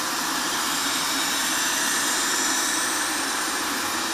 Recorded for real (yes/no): no